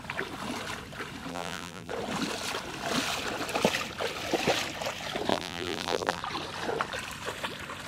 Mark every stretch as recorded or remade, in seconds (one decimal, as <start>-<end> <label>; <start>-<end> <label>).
0.0-1.3 recorded; 1.3-1.9 remade; 1.9-5.3 recorded; 5.3-6.2 remade; 6.2-7.9 recorded